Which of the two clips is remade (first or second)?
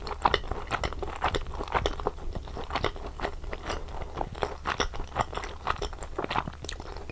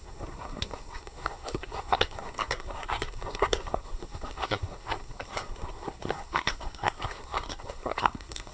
second